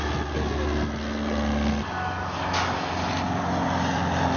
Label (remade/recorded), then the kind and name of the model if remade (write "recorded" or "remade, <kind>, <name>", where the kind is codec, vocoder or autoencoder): recorded